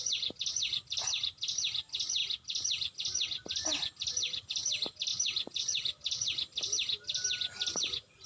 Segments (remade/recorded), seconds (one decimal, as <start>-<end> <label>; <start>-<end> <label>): 0.0-8.3 recorded